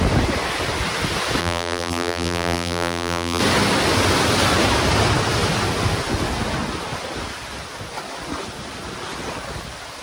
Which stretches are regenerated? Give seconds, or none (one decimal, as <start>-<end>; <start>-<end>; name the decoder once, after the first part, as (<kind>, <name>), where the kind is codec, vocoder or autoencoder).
1.4-3.4 (vocoder, BigVGAN v2)